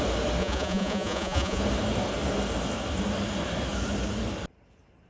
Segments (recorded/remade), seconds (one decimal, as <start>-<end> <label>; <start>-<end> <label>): 0.0-0.4 recorded; 0.4-1.6 remade; 1.6-5.1 recorded